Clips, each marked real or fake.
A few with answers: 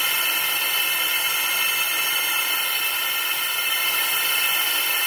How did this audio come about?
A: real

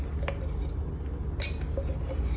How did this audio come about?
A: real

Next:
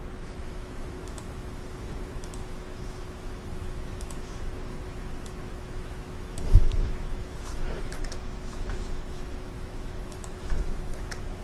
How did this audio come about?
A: fake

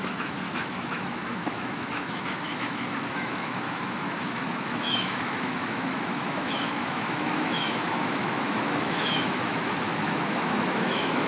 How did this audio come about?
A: fake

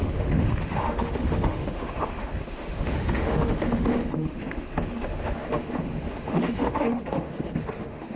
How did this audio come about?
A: fake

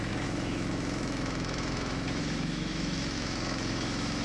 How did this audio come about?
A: fake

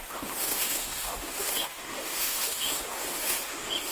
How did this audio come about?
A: fake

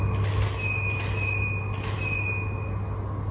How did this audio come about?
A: real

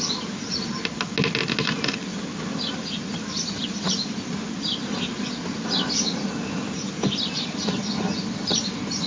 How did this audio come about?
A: real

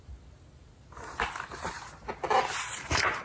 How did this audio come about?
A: real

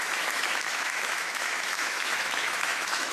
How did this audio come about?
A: fake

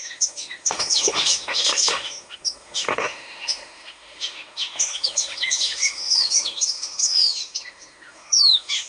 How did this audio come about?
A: fake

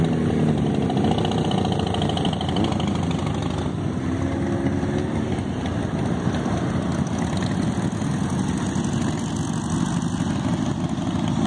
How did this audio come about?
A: real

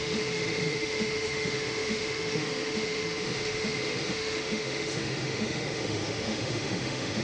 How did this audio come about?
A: fake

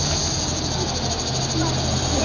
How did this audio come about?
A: real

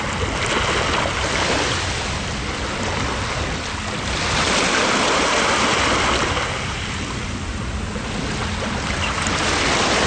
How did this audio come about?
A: real